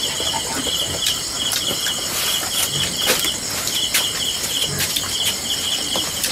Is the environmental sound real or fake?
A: real